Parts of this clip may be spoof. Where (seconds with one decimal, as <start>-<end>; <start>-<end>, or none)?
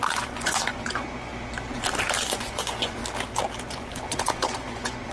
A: 0.0-1.3; 2.2-3.0; 3.7-5.1